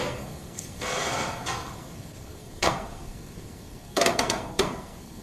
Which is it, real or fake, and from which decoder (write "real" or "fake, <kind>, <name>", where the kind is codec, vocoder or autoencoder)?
fake, codec, SNAC